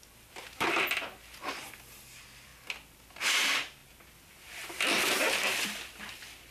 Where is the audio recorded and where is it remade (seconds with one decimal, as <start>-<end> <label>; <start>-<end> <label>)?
0.0-6.5 recorded